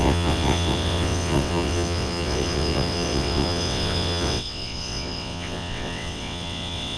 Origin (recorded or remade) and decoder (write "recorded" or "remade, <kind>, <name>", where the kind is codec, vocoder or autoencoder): remade, vocoder, WaveNeXt